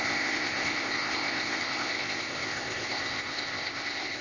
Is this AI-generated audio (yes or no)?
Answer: yes